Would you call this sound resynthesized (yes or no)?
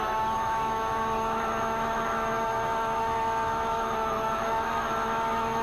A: yes